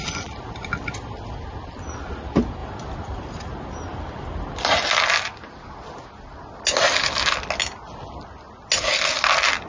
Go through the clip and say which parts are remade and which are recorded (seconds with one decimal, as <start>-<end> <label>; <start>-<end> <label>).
0.0-9.7 recorded